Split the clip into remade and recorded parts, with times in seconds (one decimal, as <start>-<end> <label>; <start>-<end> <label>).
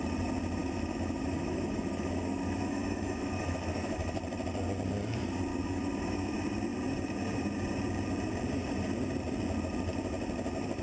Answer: 0.0-0.6 recorded; 0.6-4.2 remade; 4.2-5.5 recorded; 5.5-6.3 remade; 6.3-10.8 recorded